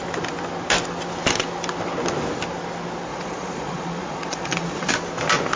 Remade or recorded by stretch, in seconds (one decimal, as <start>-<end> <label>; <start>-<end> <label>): 0.0-3.1 recorded; 3.1-4.9 remade; 4.9-5.6 recorded